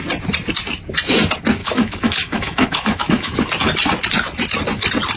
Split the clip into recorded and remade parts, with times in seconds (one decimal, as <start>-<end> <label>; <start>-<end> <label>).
0.0-1.6 recorded; 1.6-3.4 remade; 3.4-5.2 recorded